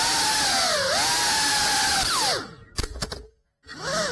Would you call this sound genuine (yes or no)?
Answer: yes